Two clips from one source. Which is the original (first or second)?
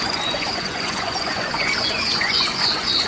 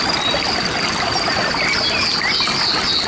second